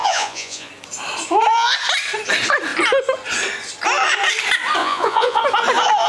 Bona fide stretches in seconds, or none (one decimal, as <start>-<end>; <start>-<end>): 0.7-4.8; 5.4-6.1